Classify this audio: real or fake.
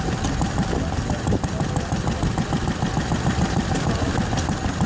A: real